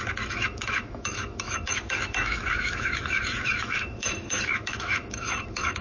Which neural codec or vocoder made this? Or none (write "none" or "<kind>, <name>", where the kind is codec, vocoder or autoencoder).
autoencoder, DAC-VAE